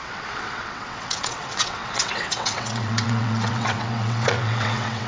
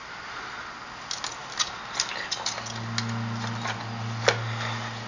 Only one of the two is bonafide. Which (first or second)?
second